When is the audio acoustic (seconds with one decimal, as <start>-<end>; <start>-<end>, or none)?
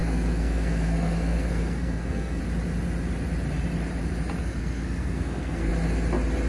2.4-4.4; 5.7-6.5